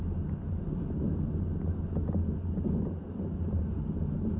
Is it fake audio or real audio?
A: real